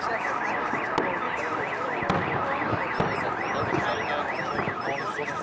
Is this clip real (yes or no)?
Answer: yes